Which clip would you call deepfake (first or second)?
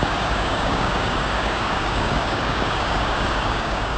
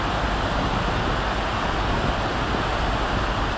first